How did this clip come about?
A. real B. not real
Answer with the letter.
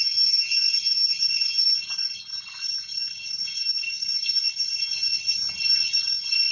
A